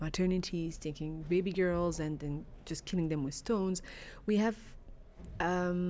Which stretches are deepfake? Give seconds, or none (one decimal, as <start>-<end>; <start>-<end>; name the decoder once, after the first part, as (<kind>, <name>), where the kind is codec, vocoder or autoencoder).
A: none